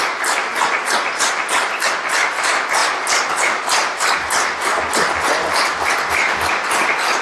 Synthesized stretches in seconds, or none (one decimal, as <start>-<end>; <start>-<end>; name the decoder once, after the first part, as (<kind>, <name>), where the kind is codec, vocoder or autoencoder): none